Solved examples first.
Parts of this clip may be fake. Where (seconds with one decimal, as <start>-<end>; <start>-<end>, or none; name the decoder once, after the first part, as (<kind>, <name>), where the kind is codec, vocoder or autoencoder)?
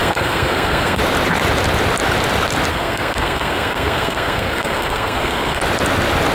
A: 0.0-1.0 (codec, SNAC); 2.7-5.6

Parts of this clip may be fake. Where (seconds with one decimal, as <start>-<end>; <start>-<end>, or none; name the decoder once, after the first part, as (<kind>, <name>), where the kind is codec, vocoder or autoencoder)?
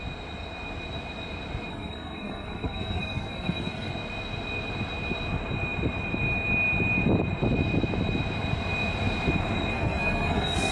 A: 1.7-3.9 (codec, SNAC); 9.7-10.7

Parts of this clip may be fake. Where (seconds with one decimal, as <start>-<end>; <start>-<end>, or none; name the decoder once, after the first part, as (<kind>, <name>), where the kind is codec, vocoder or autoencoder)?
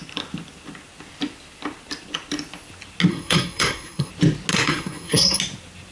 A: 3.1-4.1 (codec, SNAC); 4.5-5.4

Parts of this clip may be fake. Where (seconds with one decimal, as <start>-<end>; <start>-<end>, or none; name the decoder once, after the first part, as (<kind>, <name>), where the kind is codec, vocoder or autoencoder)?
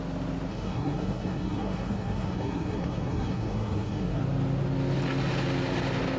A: 0.5-4.2 (codec, SNAC)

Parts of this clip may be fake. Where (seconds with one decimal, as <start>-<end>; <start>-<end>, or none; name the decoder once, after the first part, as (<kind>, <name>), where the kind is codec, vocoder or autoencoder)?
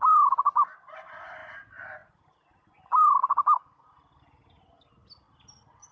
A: none